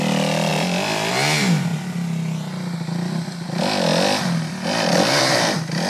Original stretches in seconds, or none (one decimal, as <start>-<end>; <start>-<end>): 0.0-5.9